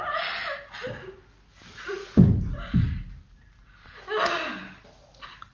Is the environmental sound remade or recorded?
recorded